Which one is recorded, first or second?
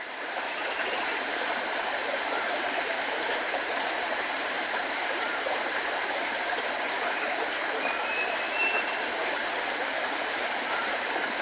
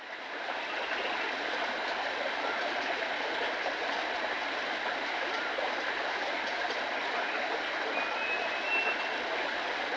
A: second